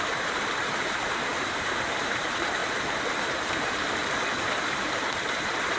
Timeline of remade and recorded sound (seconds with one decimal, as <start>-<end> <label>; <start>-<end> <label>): 0.0-2.6 remade; 2.6-3.2 recorded; 3.2-4.0 remade; 4.0-4.6 recorded; 4.6-5.8 remade